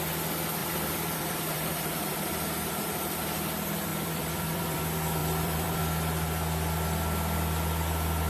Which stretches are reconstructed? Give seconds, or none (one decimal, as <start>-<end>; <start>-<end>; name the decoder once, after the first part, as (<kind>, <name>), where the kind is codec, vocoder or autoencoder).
0.6-2.3 (vocoder, BigVGAN v2); 3.9-4.8; 5.2-5.8